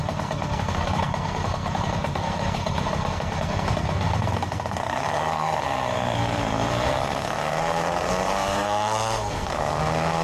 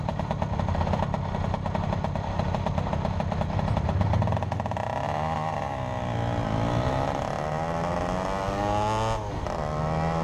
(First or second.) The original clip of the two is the second